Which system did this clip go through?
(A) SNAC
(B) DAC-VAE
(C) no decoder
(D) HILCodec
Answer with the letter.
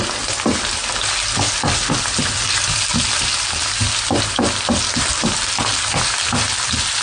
C